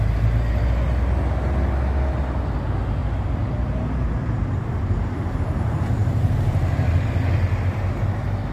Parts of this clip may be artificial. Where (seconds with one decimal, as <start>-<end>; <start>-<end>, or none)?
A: 3.0-7.3